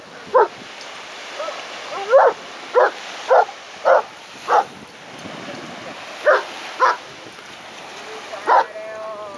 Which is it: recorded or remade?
recorded